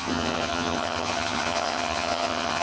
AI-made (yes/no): yes